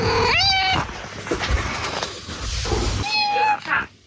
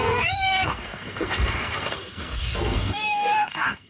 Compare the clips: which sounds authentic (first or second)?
first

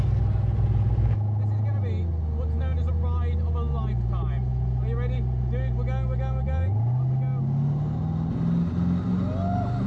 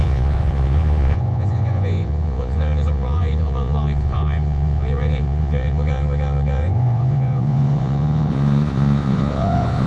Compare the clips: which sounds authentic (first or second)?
first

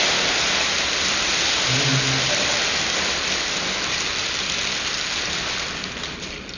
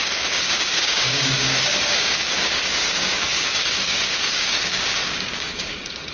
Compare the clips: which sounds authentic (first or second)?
first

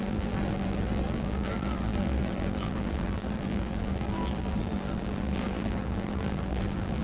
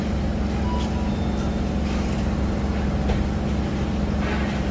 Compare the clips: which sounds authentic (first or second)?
second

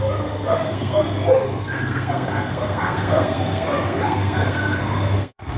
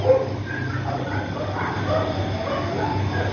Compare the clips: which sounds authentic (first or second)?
second